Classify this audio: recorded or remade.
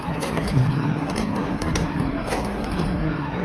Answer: remade